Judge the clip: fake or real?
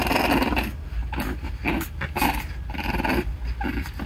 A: real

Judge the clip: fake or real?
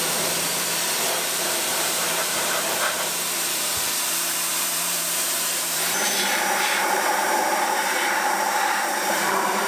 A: fake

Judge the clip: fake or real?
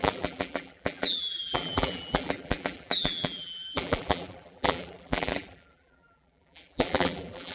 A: fake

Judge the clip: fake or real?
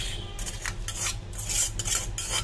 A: real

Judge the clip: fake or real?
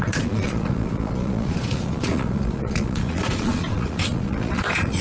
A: fake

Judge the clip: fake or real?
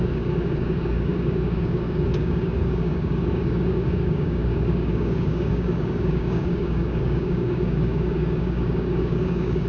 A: fake